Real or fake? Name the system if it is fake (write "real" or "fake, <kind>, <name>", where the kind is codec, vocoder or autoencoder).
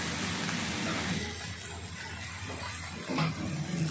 real